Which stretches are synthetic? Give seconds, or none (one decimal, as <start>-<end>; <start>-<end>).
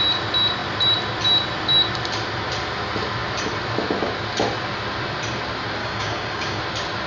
5.8-6.6